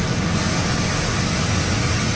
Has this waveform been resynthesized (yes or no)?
no